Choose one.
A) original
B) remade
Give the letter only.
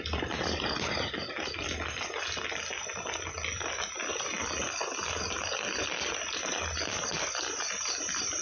A